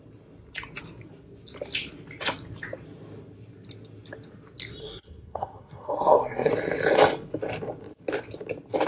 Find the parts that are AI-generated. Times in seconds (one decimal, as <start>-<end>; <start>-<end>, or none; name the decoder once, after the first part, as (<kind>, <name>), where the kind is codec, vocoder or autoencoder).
4.8-6.5 (codec, SNAC)